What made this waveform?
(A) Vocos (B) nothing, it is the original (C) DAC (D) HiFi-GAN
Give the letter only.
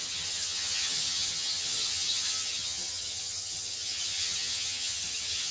D